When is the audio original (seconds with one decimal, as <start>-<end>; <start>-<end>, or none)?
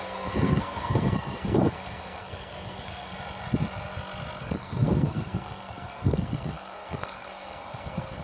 3.1-4.4